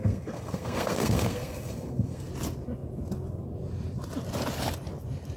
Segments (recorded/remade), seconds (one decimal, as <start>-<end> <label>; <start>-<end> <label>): 0.0-2.3 remade; 2.3-5.4 recorded